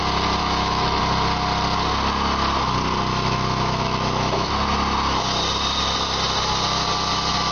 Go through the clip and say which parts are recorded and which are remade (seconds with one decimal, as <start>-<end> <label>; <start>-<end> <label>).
0.0-0.4 recorded; 0.4-1.0 remade; 1.0-3.1 recorded; 3.1-4.5 remade; 4.5-7.5 recorded